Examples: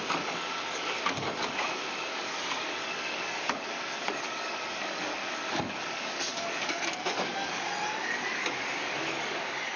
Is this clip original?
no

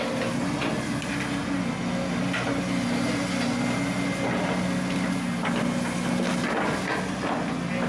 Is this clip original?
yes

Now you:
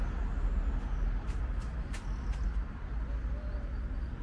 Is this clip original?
yes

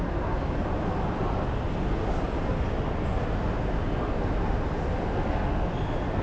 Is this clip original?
yes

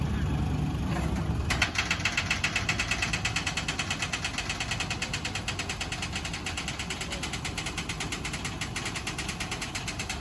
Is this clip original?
yes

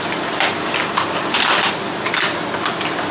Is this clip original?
no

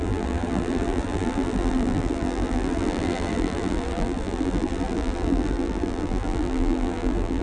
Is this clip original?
no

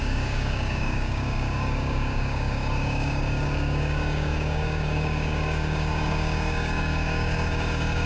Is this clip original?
no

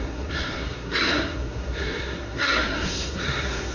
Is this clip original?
no